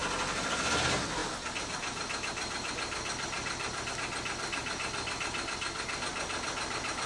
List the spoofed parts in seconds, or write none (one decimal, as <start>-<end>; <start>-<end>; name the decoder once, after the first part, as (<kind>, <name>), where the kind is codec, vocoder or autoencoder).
none

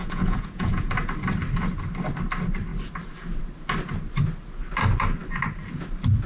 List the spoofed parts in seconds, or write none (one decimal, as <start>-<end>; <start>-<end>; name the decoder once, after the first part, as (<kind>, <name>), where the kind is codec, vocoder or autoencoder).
0.0-0.9 (vocoder, Vocos)

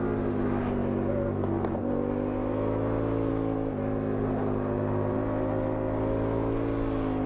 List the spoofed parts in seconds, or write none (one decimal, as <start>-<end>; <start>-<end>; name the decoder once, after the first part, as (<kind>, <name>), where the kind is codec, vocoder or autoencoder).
none

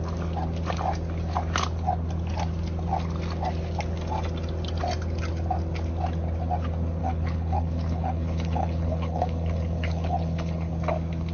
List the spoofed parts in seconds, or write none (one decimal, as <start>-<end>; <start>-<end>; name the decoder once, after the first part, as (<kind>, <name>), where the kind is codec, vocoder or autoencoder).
7.0-10.7 (codec, HILCodec)